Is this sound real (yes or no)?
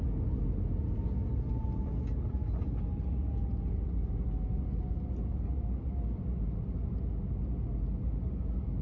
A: yes